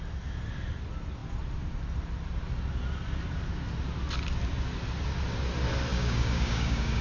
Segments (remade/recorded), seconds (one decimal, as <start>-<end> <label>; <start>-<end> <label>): 0.0-5.9 recorded; 5.9-7.0 remade

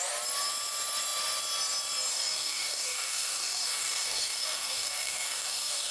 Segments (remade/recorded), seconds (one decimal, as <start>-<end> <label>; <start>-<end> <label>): 0.0-2.1 recorded; 2.1-5.9 remade

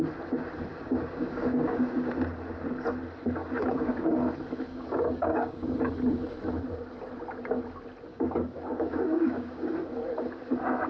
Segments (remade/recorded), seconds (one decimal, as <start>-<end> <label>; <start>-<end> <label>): 0.0-0.7 recorded; 0.7-2.1 remade; 2.1-3.4 recorded; 3.4-4.3 remade; 4.3-4.7 recorded; 4.7-5.7 remade; 5.7-8.1 recorded; 8.1-9.7 remade; 9.7-10.9 recorded